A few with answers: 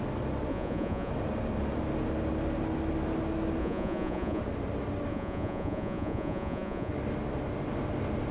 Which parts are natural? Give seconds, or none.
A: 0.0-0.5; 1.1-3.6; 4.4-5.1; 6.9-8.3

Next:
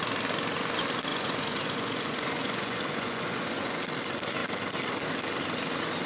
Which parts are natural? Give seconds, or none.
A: 0.0-1.1; 3.8-6.1

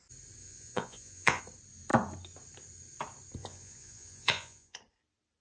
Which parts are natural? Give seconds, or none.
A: 0.0-0.4; 1.4-3.4; 4.8-5.4

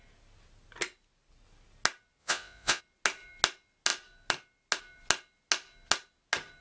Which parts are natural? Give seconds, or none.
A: 0.0-2.2; 2.8-6.6

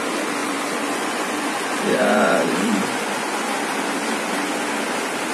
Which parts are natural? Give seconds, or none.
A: 0.0-0.4; 3.6-5.3

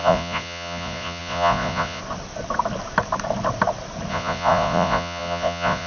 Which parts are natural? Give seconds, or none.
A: 2.0-4.1

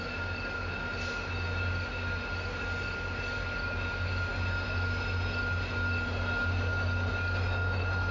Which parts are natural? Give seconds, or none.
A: 0.0-8.1